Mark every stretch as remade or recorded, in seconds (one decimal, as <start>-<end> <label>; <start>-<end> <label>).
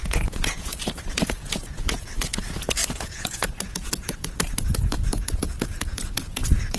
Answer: 0.0-6.8 remade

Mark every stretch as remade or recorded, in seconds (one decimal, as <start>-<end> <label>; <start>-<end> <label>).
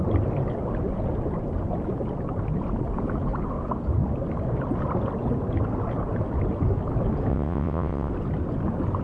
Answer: 0.0-7.3 recorded; 7.3-8.1 remade; 8.1-9.0 recorded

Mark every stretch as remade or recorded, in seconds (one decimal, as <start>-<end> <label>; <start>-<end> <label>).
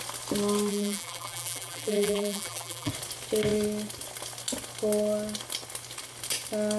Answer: 0.0-0.7 recorded; 0.7-2.9 remade; 2.9-6.8 recorded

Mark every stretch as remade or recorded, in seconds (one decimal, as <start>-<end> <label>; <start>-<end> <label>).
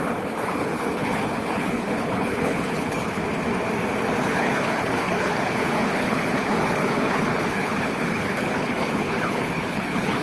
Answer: 0.0-3.2 remade; 3.2-4.2 recorded; 4.2-10.2 remade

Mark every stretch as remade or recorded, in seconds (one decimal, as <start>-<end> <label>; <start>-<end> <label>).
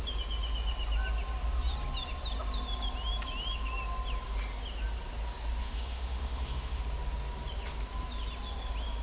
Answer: 0.0-5.6 recorded; 5.6-6.8 remade; 6.8-9.0 recorded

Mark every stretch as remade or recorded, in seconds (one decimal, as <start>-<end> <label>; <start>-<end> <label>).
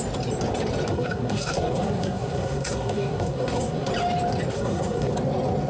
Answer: 0.0-0.9 recorded; 0.9-3.9 remade; 3.9-4.5 recorded; 4.5-5.1 remade; 5.1-5.7 recorded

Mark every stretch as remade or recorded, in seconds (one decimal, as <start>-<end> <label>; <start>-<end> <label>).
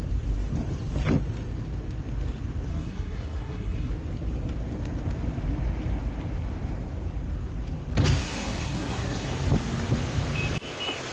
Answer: 0.0-2.7 recorded; 2.7-3.9 remade; 3.9-8.2 recorded; 8.2-9.3 remade; 9.3-11.1 recorded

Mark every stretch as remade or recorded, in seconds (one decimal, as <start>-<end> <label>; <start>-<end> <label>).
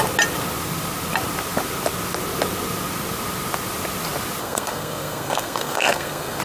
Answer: 0.0-4.4 recorded; 4.4-6.4 remade